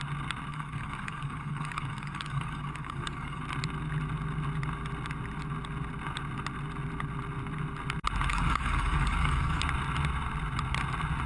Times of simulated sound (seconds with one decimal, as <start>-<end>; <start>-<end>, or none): 0.5-3.4; 8.3-9.6